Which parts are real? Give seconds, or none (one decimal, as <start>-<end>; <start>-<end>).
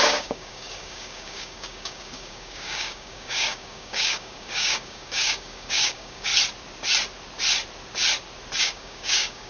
6.3-8.6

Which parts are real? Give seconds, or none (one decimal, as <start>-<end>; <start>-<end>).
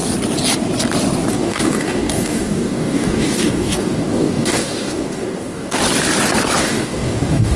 0.0-1.3; 5.8-6.6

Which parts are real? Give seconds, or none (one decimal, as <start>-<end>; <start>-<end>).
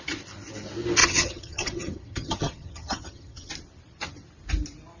0.0-1.0; 3.5-5.0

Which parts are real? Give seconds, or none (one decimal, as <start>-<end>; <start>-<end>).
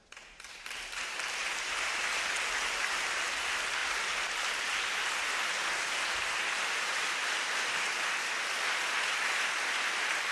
0.0-1.4; 2.1-3.8; 7.6-10.3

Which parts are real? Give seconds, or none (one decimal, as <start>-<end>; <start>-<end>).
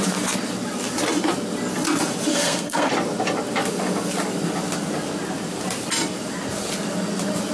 0.0-2.3; 2.9-7.5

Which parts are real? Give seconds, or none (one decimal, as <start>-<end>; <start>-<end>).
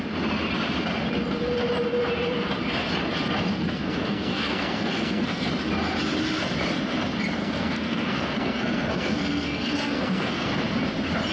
0.0-3.5; 5.5-7.4; 10.5-11.3